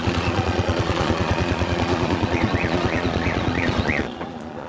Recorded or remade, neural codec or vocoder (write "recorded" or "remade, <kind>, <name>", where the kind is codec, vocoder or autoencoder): remade, vocoder, Vocos